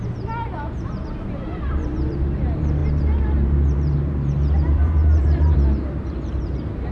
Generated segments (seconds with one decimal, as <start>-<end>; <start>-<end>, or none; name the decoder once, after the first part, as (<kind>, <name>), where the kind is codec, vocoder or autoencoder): 0.0-6.9 (vocoder, BigVGAN v2)